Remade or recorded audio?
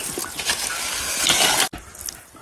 recorded